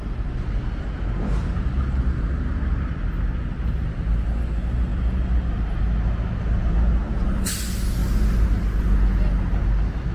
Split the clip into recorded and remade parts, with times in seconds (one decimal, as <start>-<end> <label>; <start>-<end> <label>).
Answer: 0.0-10.1 recorded